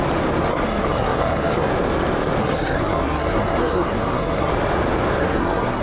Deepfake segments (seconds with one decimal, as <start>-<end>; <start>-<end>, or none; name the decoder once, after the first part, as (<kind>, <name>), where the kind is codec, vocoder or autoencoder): 0.5-1.7 (codec, SNAC); 2.4-4.5; 5.2-5.8